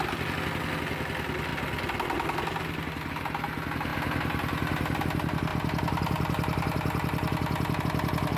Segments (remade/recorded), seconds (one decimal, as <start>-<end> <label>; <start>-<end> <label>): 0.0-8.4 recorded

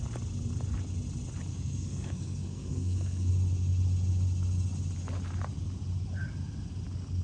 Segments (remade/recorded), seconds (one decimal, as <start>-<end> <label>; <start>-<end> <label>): 0.0-1.5 recorded; 1.5-3.3 remade; 3.3-7.2 recorded

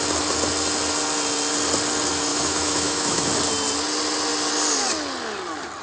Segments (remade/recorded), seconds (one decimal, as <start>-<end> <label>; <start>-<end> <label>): 0.0-2.3 recorded; 2.3-3.3 remade; 3.3-5.8 recorded

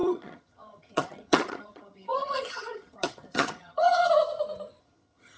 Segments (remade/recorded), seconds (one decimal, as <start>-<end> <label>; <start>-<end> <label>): 0.0-4.0 remade; 4.0-4.8 recorded; 4.8-5.4 remade

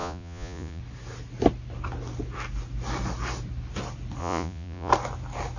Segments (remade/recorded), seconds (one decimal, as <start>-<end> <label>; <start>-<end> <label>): 0.0-0.8 remade; 0.8-4.2 recorded; 4.2-4.9 remade; 4.9-5.6 recorded

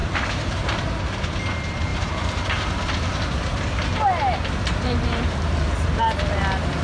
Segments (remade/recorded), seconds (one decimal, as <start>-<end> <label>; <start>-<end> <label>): 0.0-1.0 remade; 1.0-1.9 recorded; 1.9-6.0 remade; 6.0-6.8 recorded